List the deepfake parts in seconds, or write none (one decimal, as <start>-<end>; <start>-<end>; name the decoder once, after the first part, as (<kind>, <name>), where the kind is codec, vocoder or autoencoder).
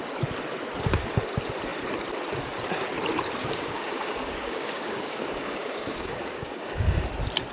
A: 3.4-7.1 (codec, DAC)